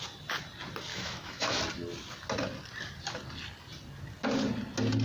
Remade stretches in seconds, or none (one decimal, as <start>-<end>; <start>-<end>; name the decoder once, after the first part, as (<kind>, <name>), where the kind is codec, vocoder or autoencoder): 0.9-1.6 (autoencoder, DAC-VAE)